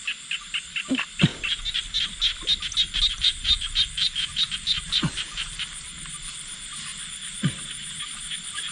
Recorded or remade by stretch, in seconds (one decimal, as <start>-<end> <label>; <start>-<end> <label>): 0.0-0.9 recorded; 0.9-1.3 remade; 1.3-3.1 recorded; 3.1-8.7 remade